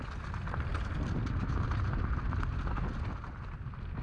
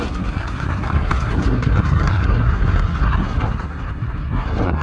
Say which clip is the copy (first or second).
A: second